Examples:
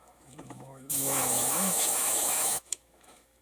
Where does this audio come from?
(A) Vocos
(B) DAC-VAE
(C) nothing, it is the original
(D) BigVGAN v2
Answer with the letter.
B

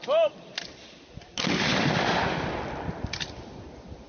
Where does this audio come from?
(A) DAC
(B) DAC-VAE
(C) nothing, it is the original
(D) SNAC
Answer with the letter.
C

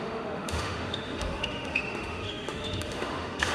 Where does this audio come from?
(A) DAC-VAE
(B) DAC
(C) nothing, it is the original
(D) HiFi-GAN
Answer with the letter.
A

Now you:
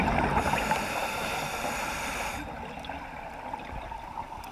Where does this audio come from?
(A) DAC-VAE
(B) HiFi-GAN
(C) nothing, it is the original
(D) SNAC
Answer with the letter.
C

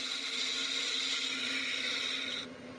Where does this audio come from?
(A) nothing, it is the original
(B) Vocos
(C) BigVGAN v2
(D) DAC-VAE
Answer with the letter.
A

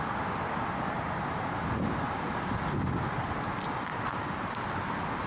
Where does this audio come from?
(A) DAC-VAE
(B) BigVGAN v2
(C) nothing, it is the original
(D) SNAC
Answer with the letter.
C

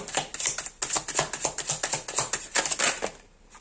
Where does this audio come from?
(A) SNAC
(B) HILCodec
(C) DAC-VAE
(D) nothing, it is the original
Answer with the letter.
D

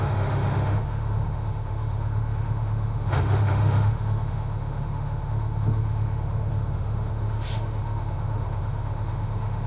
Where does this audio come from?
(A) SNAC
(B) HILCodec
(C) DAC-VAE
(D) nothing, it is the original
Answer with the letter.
C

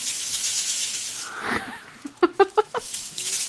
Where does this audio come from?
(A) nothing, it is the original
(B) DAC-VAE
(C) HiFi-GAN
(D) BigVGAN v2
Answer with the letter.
B